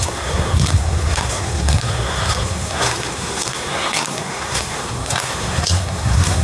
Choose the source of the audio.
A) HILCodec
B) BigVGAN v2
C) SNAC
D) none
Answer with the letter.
C